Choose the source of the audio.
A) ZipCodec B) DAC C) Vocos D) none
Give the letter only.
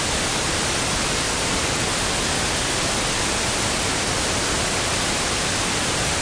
D